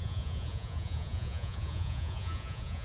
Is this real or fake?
fake